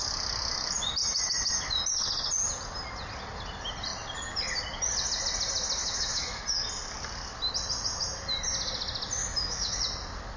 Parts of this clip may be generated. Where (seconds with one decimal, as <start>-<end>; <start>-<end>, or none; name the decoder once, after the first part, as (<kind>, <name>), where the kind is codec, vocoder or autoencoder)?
5.8-6.4 (autoencoder, DAC-VAE); 9.2-9.8